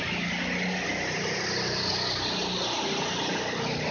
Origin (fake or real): real